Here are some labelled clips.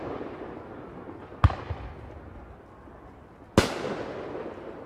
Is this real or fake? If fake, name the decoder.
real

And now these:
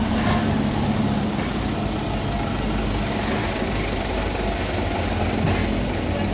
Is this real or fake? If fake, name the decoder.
real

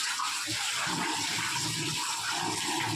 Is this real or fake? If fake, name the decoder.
real